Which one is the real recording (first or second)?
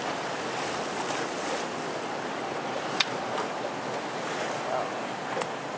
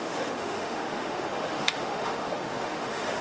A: first